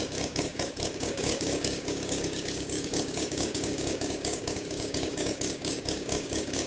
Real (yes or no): no